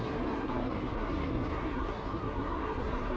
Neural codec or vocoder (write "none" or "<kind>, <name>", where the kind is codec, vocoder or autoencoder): codec, SNAC